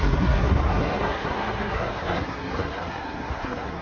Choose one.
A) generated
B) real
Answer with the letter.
A